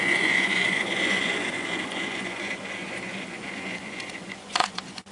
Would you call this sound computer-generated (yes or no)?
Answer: yes